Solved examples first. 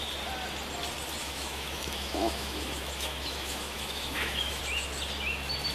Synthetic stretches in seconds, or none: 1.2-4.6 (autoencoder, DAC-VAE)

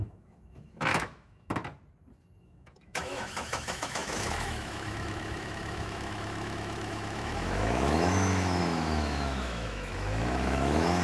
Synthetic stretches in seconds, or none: 0.0-1.6 (autoencoder, DAC-VAE); 2.4-11.0

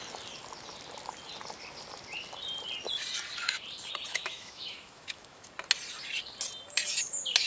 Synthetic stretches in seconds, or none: 4.1-5.5 (autoencoder, DAC-VAE)

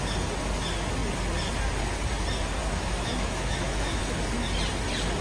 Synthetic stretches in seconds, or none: 2.6-4.0 (autoencoder, DAC-VAE)

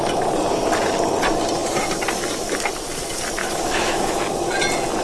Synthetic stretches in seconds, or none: 3.4-4.2 (autoencoder, DAC-VAE)

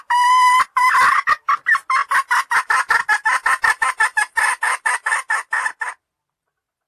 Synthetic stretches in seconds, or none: none

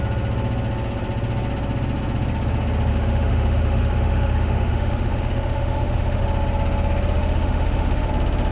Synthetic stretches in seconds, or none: 2.9-6.2 (autoencoder, DAC-VAE); 7.2-8.1